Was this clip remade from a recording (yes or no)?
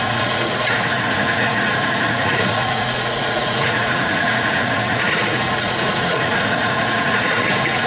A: yes